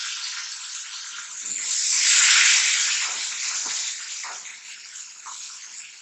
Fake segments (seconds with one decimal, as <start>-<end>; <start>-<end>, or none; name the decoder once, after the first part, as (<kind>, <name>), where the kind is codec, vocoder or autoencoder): 4.5-6.0 (codec, HILCodec)